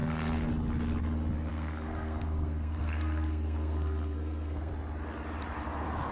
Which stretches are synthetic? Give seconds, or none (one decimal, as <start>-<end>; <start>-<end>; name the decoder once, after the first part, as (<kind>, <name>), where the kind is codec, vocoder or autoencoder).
0.0-0.5 (codec, SNAC); 1.5-4.7